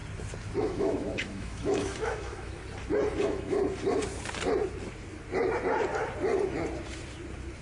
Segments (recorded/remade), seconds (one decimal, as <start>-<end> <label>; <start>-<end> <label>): 0.0-0.6 recorded; 0.6-2.6 remade; 2.6-3.2 recorded; 3.2-3.6 remade; 3.6-7.6 recorded